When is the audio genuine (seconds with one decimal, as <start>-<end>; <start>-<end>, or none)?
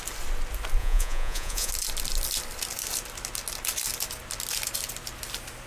0.0-0.8; 1.7-5.7